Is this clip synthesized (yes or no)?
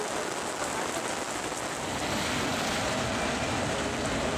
no